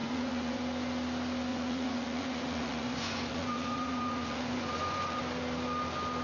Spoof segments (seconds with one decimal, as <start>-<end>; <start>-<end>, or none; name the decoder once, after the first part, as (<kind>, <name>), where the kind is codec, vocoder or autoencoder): 0.0-0.6 (vocoder, Vocos); 1.5-5.2